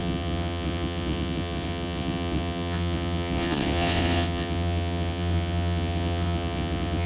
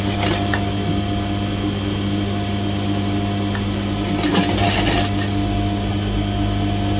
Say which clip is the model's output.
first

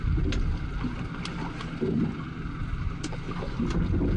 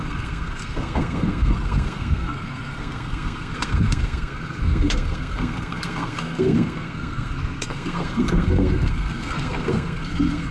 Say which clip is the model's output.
second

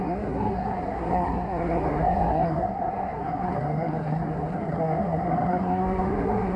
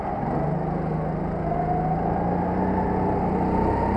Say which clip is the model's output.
first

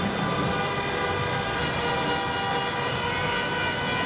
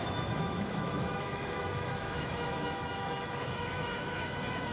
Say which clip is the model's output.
second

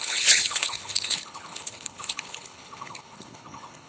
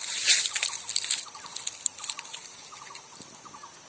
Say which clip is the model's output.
first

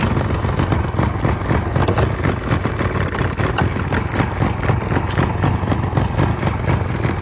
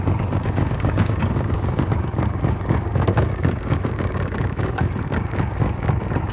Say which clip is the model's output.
second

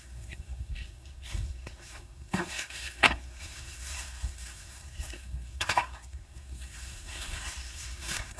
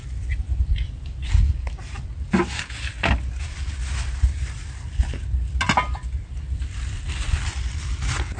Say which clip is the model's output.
first